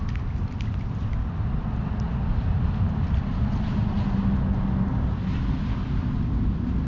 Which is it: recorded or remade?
recorded